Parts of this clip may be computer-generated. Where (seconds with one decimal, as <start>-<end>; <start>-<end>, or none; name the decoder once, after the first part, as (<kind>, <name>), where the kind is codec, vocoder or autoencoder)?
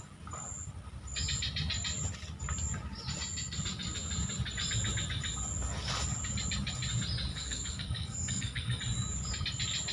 7.3-8.8 (codec, SNAC)